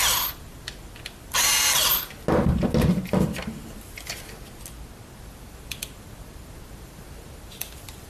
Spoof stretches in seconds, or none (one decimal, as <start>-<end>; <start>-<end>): 0.0-1.8; 5.2-8.1